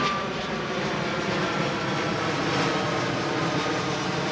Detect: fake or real real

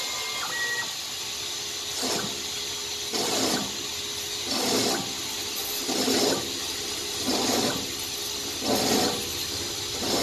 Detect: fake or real real